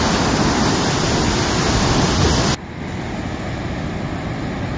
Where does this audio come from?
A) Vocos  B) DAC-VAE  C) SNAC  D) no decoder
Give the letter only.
D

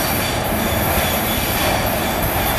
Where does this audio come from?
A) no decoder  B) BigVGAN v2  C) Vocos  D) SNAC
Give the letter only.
B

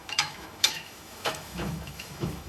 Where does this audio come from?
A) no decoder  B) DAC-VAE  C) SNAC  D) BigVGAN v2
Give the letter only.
B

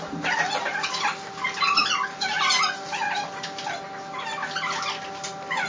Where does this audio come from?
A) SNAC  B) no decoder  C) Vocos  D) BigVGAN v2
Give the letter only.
B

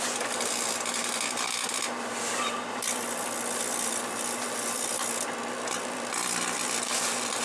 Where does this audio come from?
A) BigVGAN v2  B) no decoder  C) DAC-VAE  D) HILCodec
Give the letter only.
A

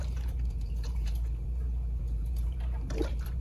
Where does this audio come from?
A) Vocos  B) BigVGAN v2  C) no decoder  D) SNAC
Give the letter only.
B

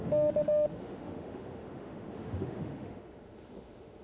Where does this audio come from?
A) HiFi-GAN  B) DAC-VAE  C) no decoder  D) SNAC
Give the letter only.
B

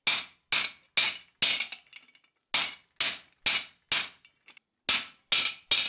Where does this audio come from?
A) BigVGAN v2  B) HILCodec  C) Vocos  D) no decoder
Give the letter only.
D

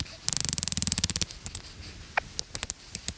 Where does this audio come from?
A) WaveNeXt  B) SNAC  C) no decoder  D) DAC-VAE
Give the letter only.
C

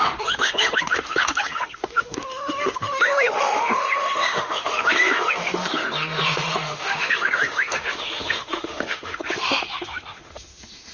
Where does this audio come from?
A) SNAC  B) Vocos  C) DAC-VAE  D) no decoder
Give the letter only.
C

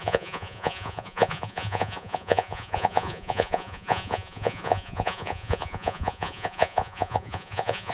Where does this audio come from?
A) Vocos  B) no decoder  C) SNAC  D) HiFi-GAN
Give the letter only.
A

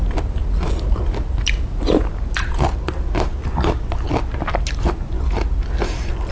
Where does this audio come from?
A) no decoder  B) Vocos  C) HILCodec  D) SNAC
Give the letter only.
A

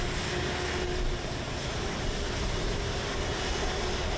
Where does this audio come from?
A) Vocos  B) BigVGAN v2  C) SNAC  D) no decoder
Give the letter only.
D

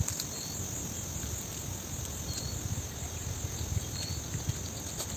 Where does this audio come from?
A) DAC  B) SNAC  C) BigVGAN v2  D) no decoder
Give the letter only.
D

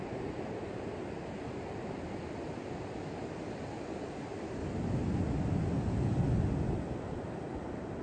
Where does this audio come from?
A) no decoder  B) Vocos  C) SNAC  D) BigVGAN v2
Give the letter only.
A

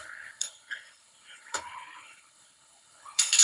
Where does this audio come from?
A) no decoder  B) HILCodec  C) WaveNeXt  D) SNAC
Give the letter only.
B